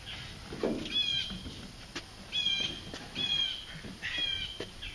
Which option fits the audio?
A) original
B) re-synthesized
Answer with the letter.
A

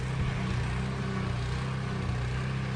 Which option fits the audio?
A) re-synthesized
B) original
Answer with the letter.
B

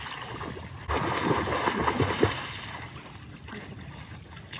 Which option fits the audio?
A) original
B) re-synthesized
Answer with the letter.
A